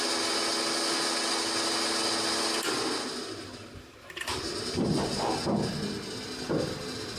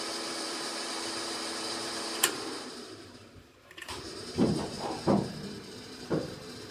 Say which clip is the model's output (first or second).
second